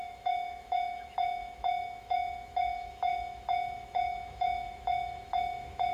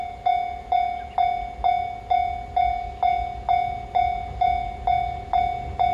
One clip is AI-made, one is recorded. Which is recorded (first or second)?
second